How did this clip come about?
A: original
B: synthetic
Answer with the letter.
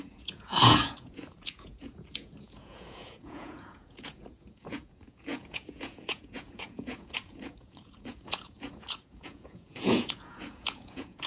B